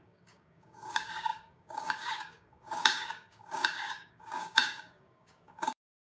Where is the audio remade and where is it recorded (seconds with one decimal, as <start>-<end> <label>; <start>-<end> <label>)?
0.0-6.0 remade